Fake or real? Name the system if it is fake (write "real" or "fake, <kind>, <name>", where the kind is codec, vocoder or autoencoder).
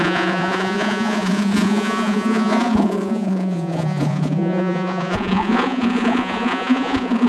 fake, vocoder, Vocos